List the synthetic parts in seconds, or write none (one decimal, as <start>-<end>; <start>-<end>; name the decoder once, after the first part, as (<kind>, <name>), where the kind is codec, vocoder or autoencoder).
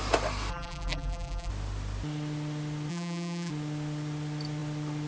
0.5-1.5 (vocoder, BigVGAN v2); 2.9-3.5